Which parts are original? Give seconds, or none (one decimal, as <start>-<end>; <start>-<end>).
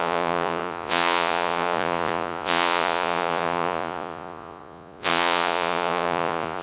none